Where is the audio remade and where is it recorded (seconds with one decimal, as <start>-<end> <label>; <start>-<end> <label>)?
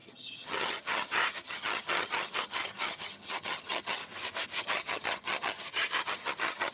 0.0-4.0 remade; 4.0-4.6 recorded; 4.6-6.7 remade